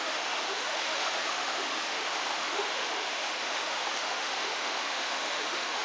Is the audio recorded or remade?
remade